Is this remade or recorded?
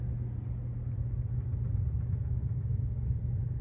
recorded